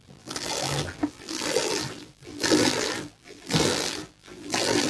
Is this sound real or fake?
fake